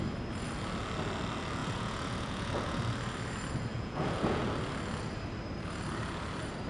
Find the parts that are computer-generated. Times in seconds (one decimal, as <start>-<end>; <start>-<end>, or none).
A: 1.6-2.8; 3.7-4.4